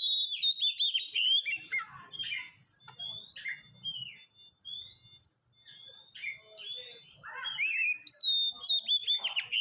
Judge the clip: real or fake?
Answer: real